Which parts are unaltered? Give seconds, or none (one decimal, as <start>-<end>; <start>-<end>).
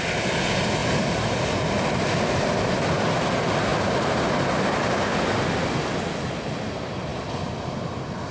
0.0-0.8; 1.5-3.7; 4.8-8.3